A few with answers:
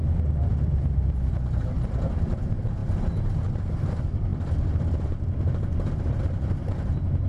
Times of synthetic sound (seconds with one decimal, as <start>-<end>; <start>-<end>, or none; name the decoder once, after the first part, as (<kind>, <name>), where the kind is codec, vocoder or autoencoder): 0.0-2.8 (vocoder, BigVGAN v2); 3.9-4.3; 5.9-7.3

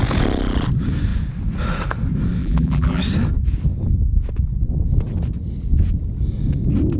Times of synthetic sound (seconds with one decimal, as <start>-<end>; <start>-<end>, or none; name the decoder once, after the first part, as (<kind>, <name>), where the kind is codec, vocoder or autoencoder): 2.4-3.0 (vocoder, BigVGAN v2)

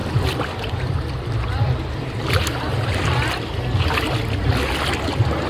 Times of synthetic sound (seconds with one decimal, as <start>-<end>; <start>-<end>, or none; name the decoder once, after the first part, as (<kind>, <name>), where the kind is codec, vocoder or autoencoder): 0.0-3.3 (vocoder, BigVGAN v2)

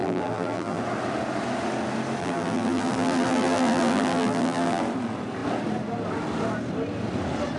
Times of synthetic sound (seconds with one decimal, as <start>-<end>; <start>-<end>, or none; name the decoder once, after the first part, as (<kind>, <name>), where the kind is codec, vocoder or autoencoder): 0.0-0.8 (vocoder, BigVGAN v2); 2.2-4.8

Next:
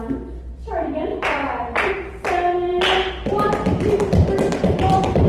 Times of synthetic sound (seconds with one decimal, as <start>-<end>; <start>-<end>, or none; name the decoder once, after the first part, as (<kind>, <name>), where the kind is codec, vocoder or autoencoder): 1.1-1.9 (vocoder, BigVGAN v2); 2.7-3.9